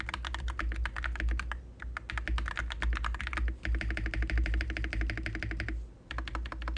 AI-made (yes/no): no